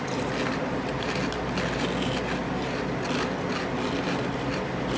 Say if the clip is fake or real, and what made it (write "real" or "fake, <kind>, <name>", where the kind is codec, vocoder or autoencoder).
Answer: real